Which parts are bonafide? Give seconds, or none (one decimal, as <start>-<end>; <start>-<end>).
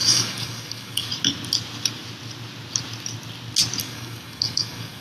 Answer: 1.1-3.8